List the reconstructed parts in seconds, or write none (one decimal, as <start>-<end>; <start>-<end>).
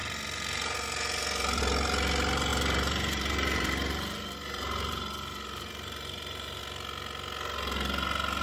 0.0-1.6; 2.5-6.6